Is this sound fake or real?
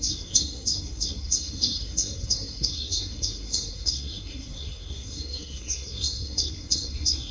fake